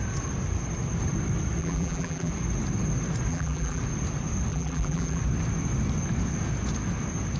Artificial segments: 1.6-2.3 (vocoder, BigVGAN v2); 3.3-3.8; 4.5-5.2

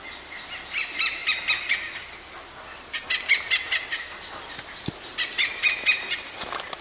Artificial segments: none

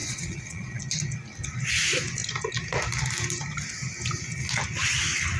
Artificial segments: 0.0-0.8 (vocoder, Vocos)

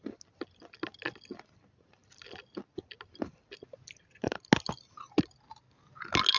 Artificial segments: none

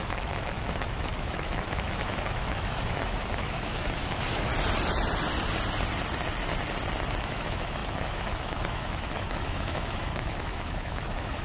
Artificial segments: 0.0-4.5 (autoencoder, DAC-VAE); 7.2-11.4

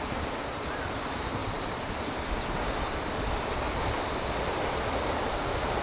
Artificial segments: 1.4-2.1 (vocoder, BigVGAN v2); 3.6-5.2

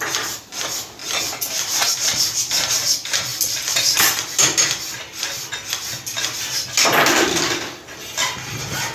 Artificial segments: none